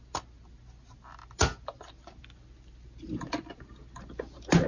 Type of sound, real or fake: real